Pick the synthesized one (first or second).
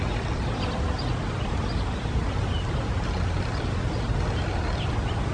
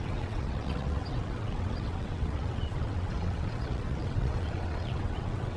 second